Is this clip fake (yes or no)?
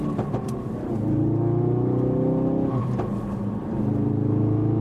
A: no